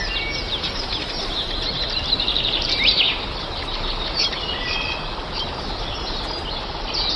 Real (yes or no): yes